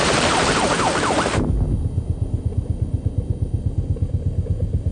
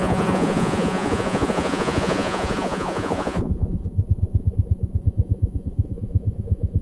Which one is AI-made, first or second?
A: second